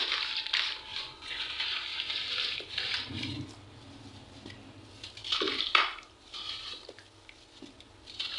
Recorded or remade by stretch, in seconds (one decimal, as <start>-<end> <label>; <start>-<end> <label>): 0.0-0.9 recorded; 0.9-1.5 remade; 1.5-8.4 recorded